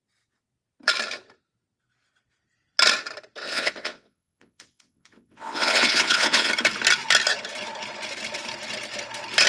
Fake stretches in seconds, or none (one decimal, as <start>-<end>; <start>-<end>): 3.4-6.5